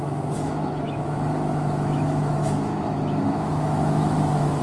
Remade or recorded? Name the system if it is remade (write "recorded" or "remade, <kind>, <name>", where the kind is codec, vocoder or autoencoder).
remade, autoencoder, DAC-VAE